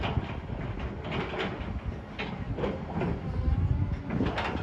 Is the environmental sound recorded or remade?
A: recorded